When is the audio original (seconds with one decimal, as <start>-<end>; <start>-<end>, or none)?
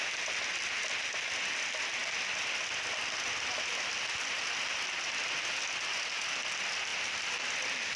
0.0-8.0